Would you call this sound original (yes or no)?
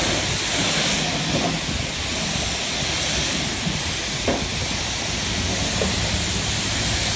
yes